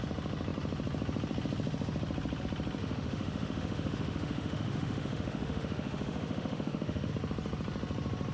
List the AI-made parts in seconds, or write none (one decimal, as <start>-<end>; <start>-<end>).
2.8-7.1